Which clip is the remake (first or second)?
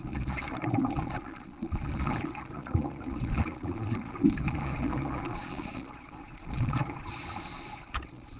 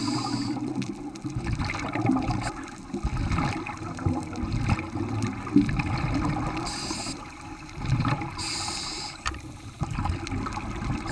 first